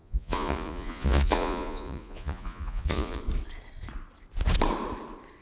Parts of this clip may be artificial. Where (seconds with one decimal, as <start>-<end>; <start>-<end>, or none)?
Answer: 0.0-3.2